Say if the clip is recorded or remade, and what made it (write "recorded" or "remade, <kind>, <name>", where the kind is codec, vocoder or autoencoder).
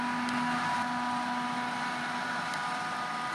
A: recorded